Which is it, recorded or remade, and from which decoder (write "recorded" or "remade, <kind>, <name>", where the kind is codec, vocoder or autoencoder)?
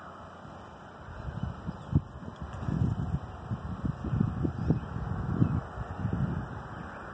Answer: recorded